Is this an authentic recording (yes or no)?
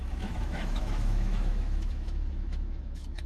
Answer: no